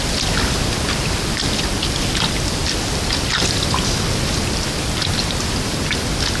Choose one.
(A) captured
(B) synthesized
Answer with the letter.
A